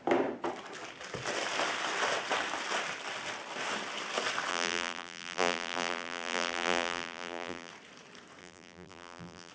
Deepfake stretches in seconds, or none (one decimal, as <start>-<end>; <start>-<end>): 4.5-7.7; 8.4-9.5